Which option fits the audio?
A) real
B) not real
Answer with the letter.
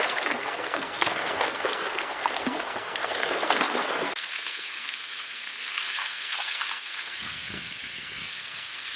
B